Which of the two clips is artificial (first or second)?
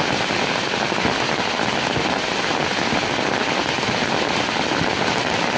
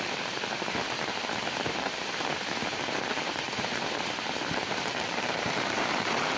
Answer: second